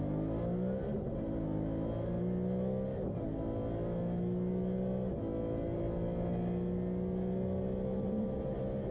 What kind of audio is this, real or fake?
real